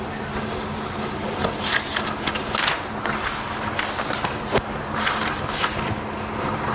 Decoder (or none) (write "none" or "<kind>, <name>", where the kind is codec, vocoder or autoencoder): none